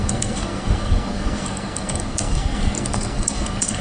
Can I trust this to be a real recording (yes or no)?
no